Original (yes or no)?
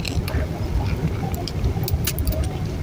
yes